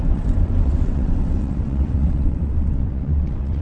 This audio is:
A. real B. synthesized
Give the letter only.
B